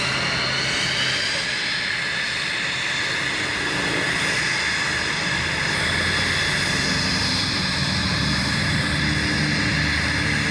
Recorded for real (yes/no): yes